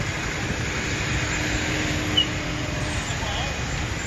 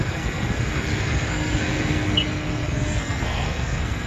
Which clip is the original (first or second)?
first